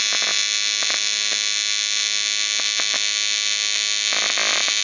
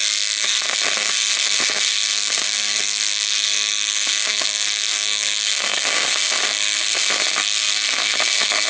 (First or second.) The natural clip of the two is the first